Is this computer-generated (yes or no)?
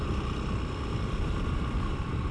no